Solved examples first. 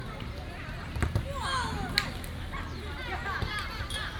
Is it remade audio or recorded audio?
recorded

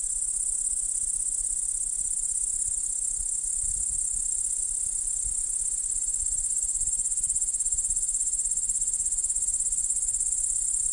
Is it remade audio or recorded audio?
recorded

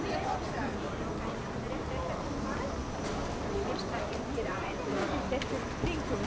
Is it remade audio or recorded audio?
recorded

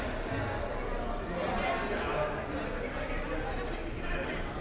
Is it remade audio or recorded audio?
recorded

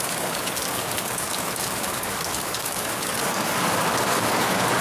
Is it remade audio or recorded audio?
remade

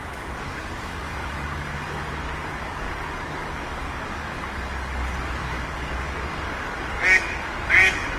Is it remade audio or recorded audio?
remade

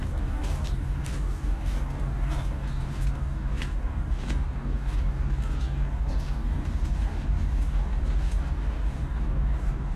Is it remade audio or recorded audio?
remade